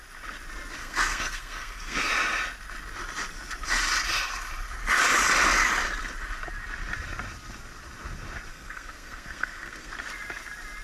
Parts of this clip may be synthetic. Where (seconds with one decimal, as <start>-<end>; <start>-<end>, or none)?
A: 0.8-2.1; 8.5-9.9